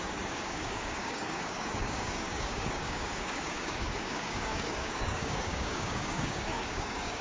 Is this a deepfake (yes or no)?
yes